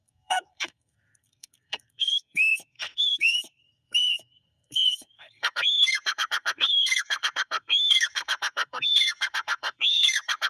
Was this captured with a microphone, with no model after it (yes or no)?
no